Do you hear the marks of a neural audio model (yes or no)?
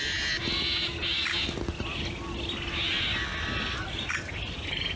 no